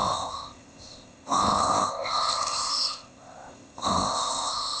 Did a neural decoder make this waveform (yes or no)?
yes